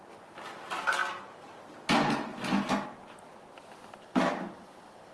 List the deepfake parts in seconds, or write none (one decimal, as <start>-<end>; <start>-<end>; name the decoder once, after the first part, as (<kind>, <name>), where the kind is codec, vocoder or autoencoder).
none